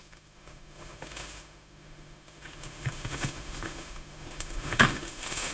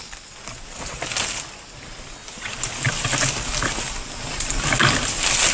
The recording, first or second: second